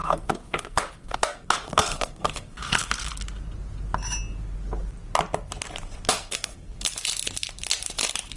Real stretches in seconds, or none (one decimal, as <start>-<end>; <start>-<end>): 3.1-6.1; 6.7-8.4